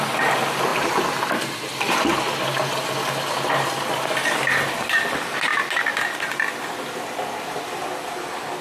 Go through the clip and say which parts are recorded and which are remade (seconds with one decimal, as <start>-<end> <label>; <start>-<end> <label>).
0.0-8.6 recorded